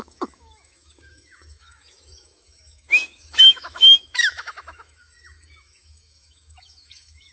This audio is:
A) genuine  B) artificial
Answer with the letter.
B